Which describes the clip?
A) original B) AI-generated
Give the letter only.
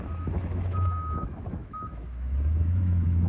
B